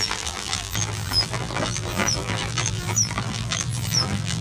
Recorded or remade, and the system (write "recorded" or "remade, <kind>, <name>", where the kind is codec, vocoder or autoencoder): remade, vocoder, BigVGAN v2